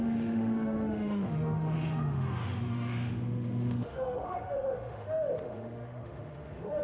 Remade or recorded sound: remade